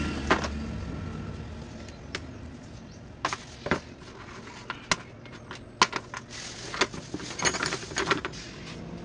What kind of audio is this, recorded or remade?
recorded